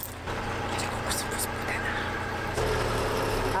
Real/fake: real